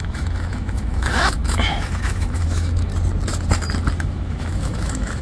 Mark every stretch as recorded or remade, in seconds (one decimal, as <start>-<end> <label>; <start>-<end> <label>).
0.0-2.9 remade; 2.9-4.0 recorded; 4.0-5.2 remade